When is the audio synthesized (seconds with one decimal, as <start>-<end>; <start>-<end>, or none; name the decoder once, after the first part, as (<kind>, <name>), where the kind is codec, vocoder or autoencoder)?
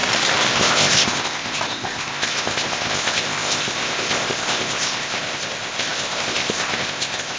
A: 0.5-7.4 (codec, ZipCodec)